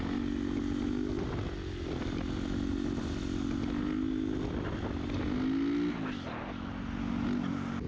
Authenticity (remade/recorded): recorded